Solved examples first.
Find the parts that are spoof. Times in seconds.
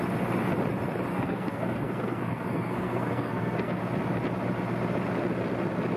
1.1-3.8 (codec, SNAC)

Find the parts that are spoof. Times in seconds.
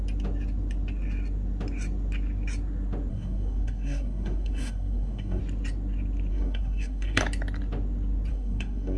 3.1-5.4 (codec, SNAC); 6.3-7.2; 8.3-9.0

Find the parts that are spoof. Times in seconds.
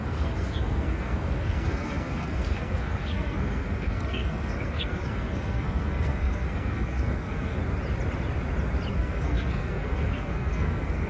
0.0-7.6 (codec, SNAC); 8.9-11.1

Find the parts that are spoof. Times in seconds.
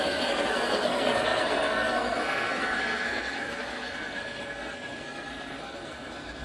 0.0-6.4 (codec, SNAC)